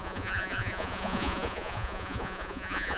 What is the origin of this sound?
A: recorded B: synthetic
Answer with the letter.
B